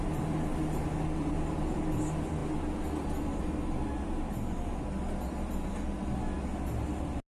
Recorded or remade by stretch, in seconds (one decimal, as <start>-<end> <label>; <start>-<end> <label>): 0.0-7.3 recorded

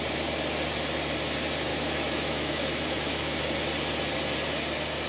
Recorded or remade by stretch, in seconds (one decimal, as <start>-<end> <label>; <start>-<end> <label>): 0.0-1.7 recorded; 1.7-3.4 remade; 3.4-5.1 recorded

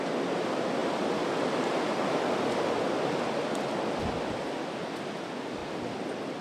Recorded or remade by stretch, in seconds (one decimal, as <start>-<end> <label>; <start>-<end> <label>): 0.0-5.6 recorded; 5.6-6.4 remade

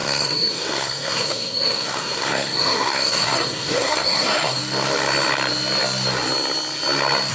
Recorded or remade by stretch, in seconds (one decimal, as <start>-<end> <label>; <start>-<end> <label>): 0.0-4.6 remade; 4.6-7.3 recorded

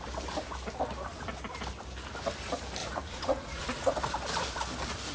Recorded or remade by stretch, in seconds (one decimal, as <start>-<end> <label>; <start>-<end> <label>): 0.0-2.8 recorded; 2.8-3.9 remade; 3.9-5.1 recorded

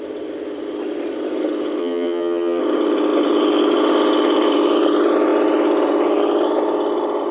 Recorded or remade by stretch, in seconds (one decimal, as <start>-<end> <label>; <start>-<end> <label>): 0.0-1.8 recorded; 1.8-2.6 remade; 2.6-7.3 recorded